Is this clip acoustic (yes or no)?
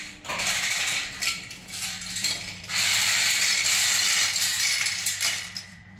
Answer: no